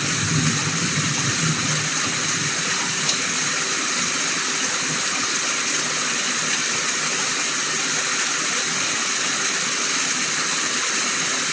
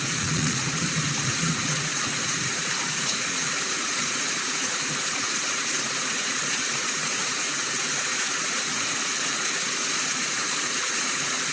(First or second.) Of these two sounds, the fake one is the second